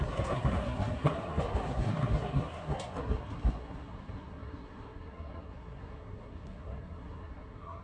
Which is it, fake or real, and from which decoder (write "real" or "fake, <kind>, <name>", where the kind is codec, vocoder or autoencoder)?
fake, codec, SNAC